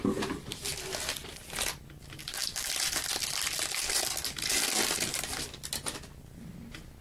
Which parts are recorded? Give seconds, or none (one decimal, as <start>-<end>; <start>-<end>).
0.0-2.2; 2.7-7.0